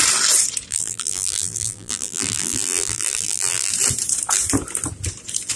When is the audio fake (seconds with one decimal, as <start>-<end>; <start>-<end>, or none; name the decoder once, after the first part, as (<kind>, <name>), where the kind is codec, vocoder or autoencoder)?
0.7-3.7 (vocoder, BigVGAN v2)